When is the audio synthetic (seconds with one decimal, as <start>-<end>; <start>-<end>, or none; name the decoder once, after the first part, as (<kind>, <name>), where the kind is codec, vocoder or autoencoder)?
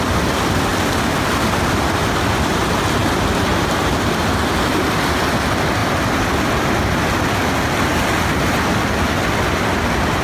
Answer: none